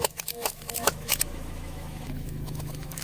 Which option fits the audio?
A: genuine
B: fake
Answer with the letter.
B